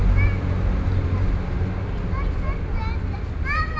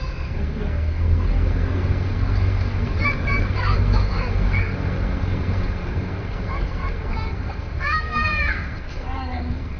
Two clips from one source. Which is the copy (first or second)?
second